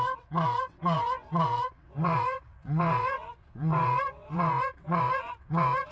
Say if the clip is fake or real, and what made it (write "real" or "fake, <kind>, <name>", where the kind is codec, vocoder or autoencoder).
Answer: fake, vocoder, WaveNeXt